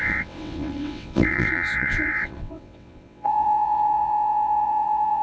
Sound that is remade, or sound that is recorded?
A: remade